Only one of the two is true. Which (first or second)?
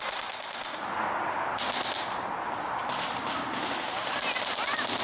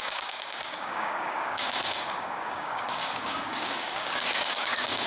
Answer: first